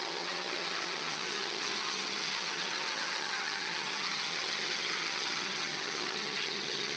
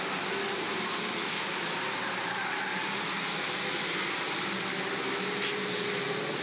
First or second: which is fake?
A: first